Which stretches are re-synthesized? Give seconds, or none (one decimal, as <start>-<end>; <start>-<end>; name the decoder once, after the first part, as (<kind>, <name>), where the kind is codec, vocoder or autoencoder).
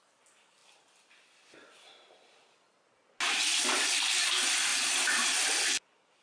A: none